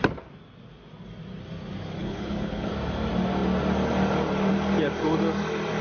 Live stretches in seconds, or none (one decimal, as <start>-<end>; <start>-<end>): 0.0-2.0; 2.7-5.8